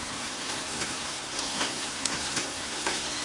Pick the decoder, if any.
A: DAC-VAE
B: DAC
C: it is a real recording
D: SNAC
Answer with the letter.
D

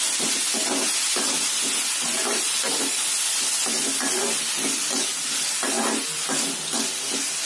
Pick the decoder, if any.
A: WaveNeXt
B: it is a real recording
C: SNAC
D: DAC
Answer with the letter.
B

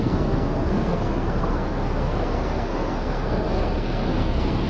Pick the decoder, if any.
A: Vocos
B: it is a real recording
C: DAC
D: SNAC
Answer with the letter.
D